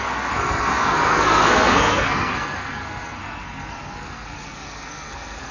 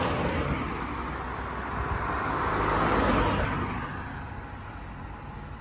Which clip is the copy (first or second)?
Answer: first